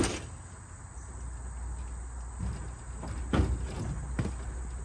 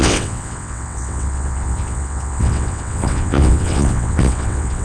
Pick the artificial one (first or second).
second